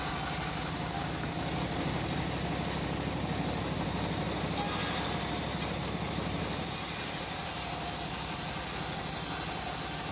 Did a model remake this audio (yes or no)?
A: no